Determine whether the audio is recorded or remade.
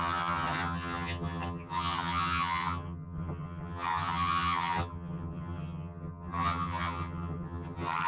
remade